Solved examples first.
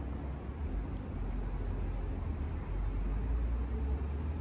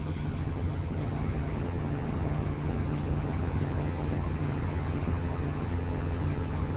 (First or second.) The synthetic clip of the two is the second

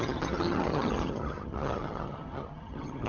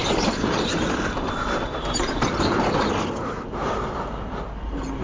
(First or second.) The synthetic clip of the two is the first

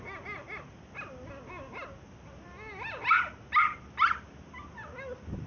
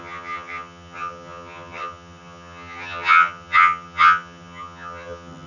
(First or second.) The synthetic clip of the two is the second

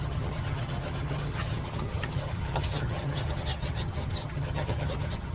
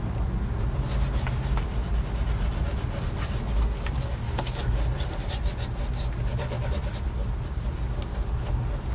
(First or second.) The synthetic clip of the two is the first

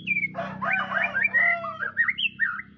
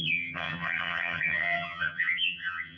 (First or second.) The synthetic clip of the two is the second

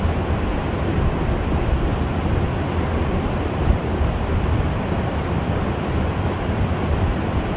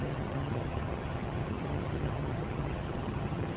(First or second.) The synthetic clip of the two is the second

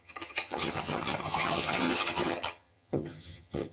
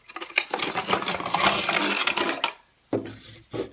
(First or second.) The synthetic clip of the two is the first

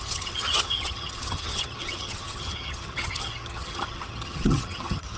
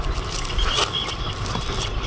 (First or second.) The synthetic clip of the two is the first